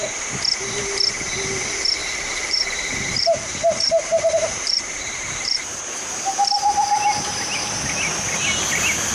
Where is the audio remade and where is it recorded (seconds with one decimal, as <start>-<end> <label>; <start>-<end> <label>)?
0.0-2.0 recorded; 2.0-5.9 remade; 5.9-9.1 recorded